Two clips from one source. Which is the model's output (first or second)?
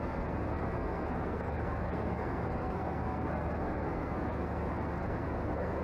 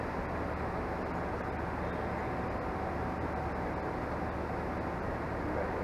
first